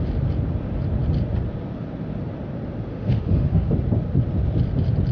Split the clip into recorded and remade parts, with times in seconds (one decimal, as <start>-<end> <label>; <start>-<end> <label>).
0.0-2.9 recorded; 2.9-3.7 remade; 3.7-5.1 recorded